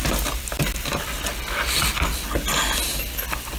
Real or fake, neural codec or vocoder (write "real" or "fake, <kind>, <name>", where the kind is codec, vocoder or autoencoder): real